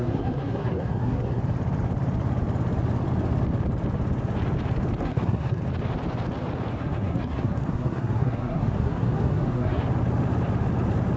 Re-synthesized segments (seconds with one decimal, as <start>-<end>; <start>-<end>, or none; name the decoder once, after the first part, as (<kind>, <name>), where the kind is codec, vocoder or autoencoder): 0.0-1.4 (codec, SNAC); 5.0-5.6; 6.7-9.8